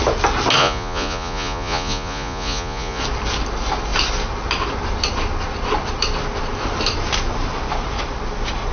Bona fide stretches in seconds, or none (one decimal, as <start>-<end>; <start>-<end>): 0.0-0.6; 3.0-8.7